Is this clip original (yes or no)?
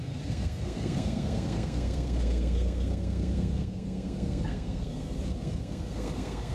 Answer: no